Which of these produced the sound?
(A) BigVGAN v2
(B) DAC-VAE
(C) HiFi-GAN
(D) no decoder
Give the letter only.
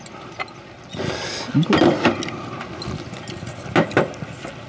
D